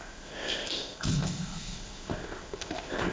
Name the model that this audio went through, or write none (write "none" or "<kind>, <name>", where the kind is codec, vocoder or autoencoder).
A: codec, ZipCodec